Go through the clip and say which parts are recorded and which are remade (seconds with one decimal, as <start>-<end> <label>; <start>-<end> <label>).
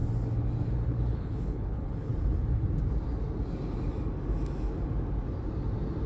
0.0-0.9 recorded; 0.9-2.1 remade; 2.1-6.1 recorded